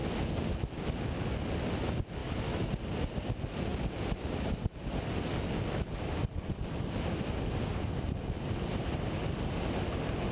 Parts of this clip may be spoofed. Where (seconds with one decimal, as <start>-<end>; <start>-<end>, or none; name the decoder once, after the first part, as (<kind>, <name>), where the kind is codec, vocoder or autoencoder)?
2.2-2.7 (autoencoder, DAC-VAE)